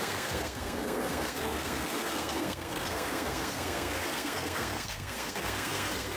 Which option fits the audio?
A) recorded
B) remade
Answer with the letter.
B